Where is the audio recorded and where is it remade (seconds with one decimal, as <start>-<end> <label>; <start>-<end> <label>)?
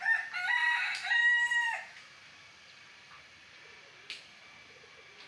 0.0-0.6 recorded; 0.6-3.8 remade; 3.8-5.3 recorded